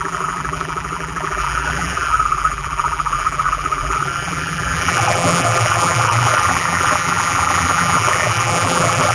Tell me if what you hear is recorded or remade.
remade